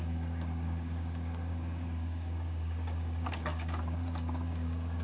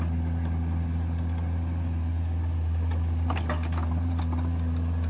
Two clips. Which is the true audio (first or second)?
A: second